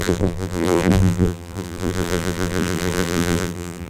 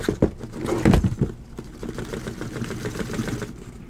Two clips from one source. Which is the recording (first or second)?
second